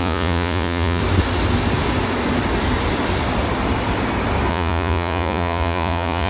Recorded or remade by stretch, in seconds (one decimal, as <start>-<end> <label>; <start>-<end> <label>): 0.0-1.0 remade; 1.0-4.5 recorded; 4.5-6.3 remade